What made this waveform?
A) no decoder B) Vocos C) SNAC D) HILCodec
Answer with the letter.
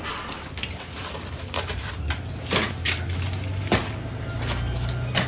A